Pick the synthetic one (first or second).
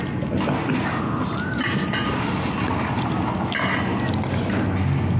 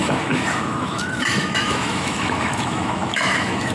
second